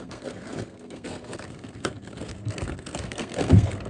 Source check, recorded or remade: remade